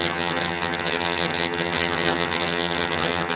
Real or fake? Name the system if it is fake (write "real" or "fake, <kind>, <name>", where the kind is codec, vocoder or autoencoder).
fake, vocoder, HiFi-GAN